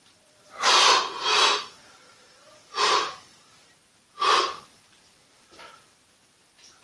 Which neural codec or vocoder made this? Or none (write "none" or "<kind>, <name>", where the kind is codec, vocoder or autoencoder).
vocoder, BigVGAN v2